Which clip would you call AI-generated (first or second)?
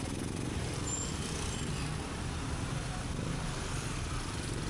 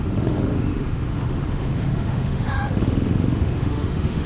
second